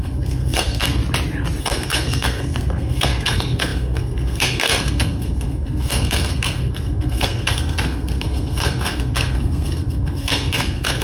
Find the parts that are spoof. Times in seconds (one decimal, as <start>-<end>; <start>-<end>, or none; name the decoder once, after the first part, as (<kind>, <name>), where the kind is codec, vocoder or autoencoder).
0.0-1.0 (codec, SNAC); 1.6-11.0